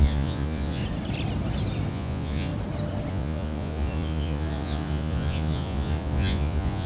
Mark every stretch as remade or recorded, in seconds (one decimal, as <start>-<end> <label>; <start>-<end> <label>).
0.0-0.8 remade; 0.8-1.9 recorded; 1.9-2.5 remade; 2.5-3.1 recorded; 3.1-6.9 remade